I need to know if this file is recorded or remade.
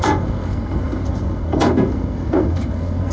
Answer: remade